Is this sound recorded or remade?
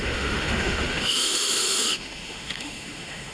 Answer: remade